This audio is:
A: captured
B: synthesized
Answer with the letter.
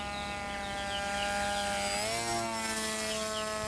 A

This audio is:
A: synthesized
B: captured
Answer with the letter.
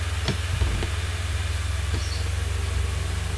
B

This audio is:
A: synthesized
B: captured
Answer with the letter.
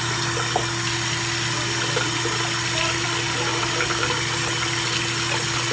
B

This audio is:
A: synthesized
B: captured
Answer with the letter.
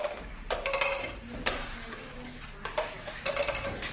B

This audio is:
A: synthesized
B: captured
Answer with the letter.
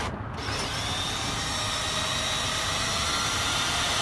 B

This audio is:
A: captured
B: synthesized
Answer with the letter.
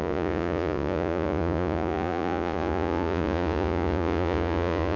B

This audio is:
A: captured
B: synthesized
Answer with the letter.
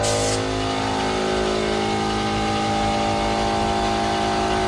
A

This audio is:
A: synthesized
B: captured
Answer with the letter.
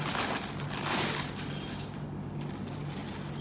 B